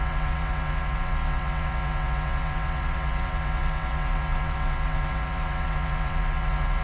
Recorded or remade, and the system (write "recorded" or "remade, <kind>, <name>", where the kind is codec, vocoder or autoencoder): remade, vocoder, WaveNeXt